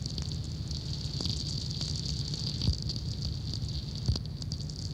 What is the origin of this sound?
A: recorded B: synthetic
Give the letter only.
A